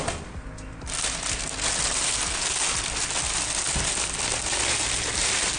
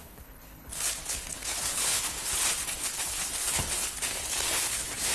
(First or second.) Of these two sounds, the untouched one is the first